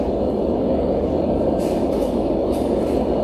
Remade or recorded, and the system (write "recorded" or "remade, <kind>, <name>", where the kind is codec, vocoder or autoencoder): remade, codec, DAC